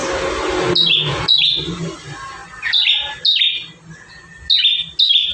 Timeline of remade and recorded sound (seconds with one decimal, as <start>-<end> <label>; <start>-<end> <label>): 0.0-5.3 recorded